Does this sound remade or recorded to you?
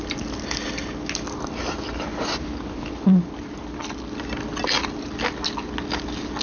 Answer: recorded